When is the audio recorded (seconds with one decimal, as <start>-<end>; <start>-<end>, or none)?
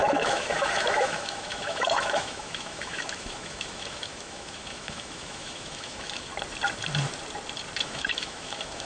6.3-7.8